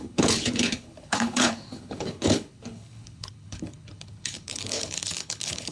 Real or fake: fake